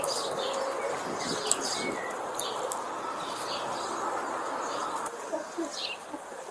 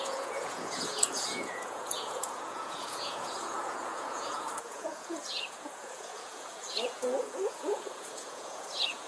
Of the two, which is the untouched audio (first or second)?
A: first